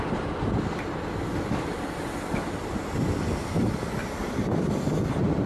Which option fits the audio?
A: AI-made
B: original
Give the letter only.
B